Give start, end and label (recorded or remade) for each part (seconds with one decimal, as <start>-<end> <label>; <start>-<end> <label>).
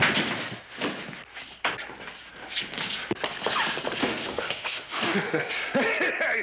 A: 0.0-4.0 recorded; 4.0-5.5 remade; 5.5-6.4 recorded